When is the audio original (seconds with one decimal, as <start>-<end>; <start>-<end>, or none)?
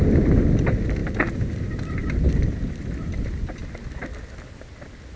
0.0-5.2